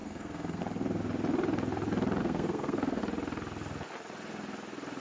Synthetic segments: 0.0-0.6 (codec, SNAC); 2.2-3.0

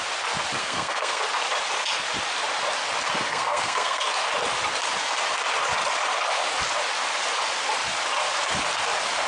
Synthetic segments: 0.6-1.2 (codec, SNAC); 3.3-4.0